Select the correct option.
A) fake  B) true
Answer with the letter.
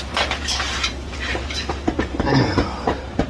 A